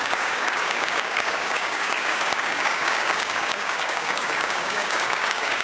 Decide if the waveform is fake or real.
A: fake